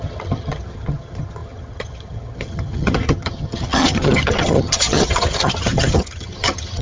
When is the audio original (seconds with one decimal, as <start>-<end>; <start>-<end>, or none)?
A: none